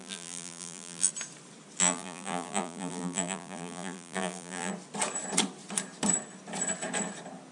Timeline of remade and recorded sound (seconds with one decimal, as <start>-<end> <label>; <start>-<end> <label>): 0.0-1.1 remade; 1.1-1.8 recorded; 1.8-4.7 remade; 4.7-7.5 recorded